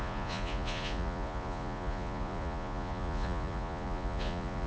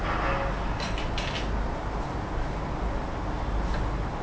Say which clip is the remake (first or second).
first